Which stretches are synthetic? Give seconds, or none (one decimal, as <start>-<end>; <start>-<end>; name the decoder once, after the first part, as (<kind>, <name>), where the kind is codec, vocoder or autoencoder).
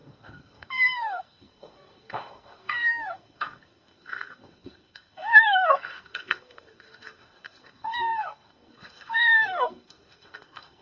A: 0.0-10.8 (codec, SNAC)